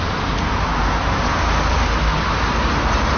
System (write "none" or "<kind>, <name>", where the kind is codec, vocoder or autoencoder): none